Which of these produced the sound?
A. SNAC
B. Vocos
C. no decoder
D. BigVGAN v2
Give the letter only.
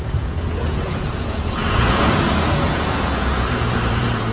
B